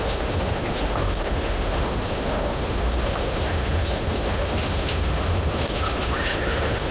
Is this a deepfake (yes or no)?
yes